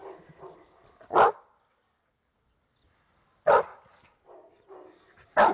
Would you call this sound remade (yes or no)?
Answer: no